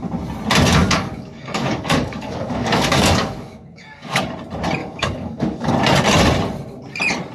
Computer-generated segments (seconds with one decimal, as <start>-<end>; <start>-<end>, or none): 0.8-4.2; 4.8-5.7